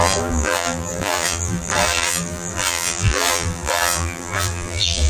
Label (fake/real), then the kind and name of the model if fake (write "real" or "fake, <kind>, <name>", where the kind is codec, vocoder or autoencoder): fake, vocoder, BigVGAN v2